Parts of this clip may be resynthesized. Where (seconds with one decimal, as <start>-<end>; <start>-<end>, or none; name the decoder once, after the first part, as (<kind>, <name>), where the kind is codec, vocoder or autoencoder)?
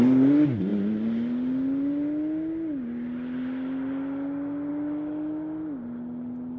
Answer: none